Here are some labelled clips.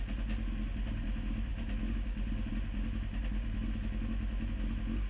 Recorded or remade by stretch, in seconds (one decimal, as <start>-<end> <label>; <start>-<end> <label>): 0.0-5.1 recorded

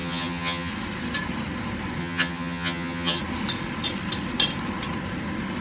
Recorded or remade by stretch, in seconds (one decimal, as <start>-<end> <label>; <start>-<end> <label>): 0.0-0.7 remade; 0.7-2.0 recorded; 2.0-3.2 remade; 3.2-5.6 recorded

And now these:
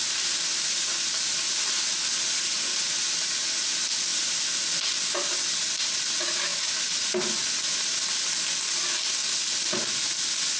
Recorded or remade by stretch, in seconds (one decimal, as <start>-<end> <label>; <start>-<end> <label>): 0.0-10.6 recorded